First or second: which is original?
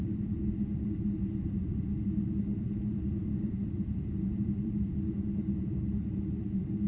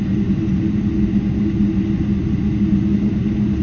second